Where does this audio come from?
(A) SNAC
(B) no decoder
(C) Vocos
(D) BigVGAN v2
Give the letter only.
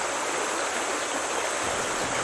B